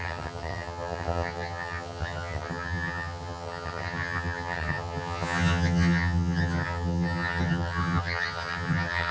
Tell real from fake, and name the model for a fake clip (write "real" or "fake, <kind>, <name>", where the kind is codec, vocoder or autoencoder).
fake, vocoder, HiFi-GAN